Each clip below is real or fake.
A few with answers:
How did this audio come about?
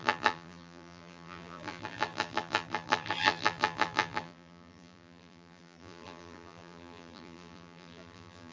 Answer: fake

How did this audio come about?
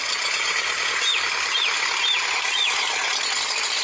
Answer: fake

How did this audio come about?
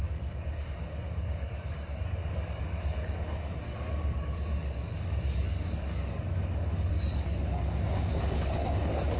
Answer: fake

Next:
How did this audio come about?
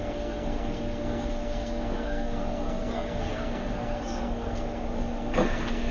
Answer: fake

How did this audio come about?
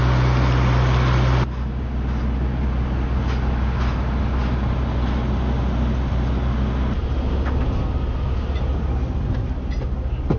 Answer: real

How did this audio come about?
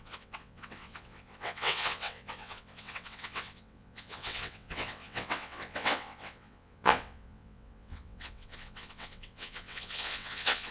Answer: fake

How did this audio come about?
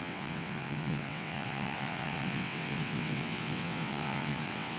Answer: fake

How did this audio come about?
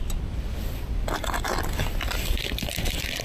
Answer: fake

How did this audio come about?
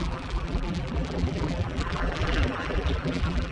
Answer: fake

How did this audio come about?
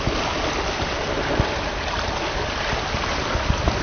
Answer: real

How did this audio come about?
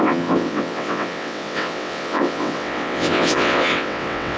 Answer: fake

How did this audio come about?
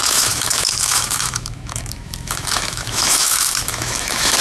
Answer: fake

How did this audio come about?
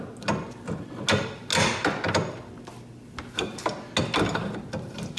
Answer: real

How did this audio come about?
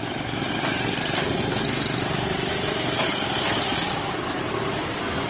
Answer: real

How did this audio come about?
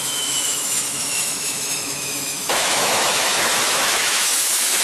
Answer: fake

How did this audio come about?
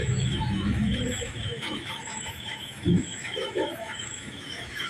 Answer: fake